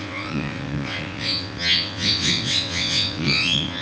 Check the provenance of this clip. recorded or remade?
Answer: remade